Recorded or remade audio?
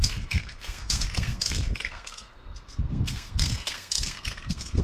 remade